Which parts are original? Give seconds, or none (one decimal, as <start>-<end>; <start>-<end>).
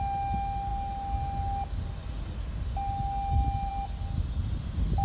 0.0-5.0